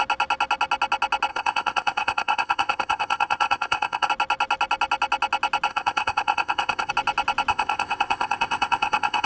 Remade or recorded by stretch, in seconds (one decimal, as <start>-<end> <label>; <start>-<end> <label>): 0.0-1.3 recorded; 1.3-4.1 remade; 4.1-5.7 recorded; 5.7-6.9 remade; 6.9-7.5 recorded; 7.5-9.3 remade